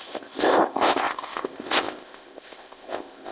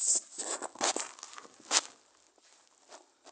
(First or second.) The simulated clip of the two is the first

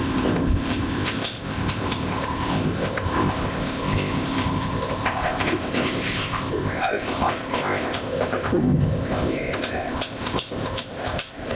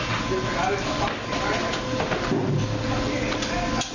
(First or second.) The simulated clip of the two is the first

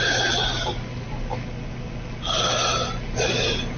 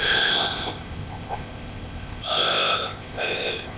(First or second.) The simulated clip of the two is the second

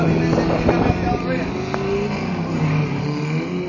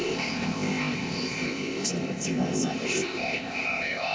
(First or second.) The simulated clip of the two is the second